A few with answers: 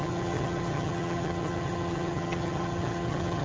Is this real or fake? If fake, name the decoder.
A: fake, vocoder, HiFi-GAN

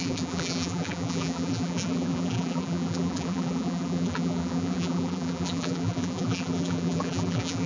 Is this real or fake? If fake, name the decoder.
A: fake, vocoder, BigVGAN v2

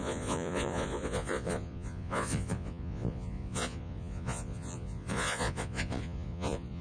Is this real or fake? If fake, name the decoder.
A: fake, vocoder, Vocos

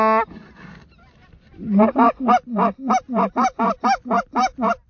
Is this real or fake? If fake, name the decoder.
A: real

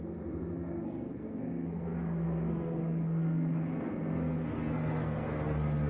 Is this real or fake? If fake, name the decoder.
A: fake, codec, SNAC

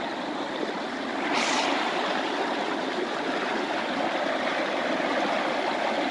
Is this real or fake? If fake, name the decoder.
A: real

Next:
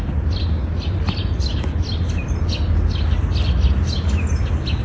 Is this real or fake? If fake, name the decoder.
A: real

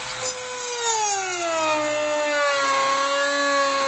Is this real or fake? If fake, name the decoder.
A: real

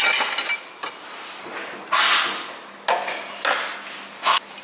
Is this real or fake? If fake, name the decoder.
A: real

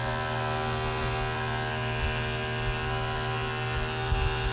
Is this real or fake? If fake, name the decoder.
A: real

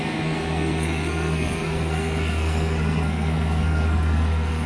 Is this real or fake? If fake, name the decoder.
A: fake, codec, SNAC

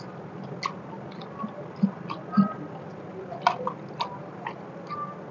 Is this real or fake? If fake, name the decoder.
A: real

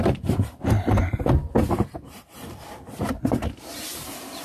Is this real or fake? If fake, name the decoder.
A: fake, vocoder, BigVGAN v2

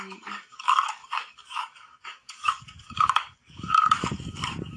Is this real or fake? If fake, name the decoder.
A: fake, codec, DAC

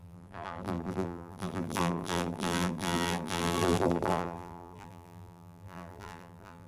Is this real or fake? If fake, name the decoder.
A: fake, vocoder, BigVGAN v2